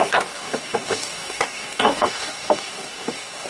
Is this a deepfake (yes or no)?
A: yes